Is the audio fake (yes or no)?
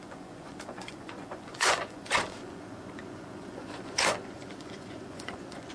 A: yes